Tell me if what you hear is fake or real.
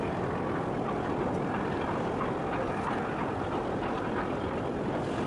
real